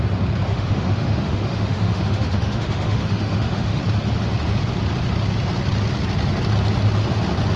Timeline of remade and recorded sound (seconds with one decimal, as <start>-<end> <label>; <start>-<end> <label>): 0.0-0.5 recorded; 0.5-3.8 remade; 3.8-7.6 recorded